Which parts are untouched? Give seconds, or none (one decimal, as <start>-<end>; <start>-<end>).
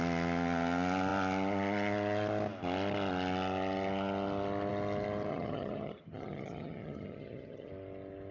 0.0-5.3; 7.7-8.3